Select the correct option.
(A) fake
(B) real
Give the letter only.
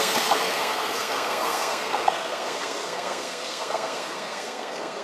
A